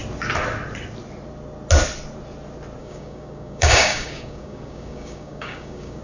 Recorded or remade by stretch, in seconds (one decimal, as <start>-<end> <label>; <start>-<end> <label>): 0.0-2.8 recorded; 2.8-6.0 remade